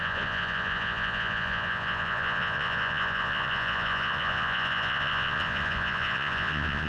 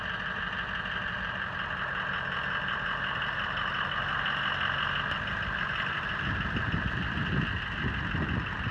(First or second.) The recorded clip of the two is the second